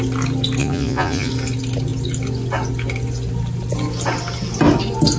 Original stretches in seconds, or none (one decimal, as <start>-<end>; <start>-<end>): 0.0-0.6; 1.3-5.2